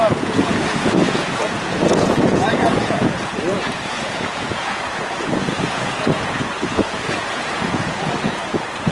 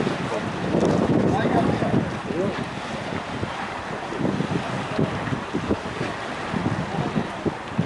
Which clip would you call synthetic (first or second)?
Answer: first